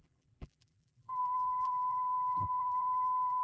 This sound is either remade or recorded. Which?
remade